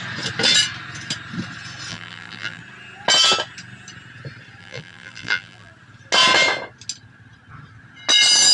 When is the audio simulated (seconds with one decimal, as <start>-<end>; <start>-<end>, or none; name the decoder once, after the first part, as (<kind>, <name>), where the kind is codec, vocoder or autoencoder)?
1.9-2.6 (vocoder, BigVGAN v2); 4.6-5.7